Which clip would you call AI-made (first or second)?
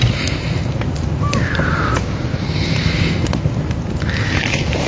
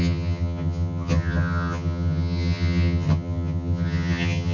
second